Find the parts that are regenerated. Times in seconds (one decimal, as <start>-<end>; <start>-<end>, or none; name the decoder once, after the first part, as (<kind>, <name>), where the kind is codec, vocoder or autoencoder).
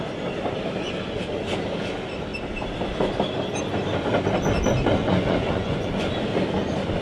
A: 5.0-6.1 (vocoder, Vocos)